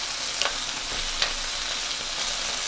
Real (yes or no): yes